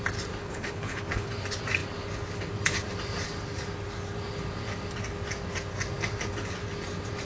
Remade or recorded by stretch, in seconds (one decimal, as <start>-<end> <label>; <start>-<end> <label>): 0.0-0.4 recorded; 0.4-1.4 remade; 1.4-7.3 recorded